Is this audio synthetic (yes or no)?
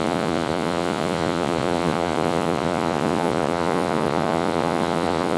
yes